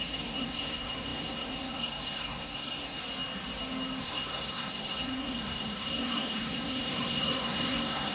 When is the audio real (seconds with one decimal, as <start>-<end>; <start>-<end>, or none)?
3.0-4.0